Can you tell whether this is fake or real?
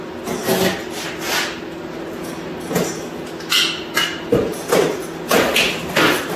real